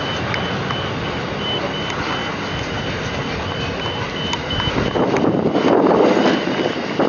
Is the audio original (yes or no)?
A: yes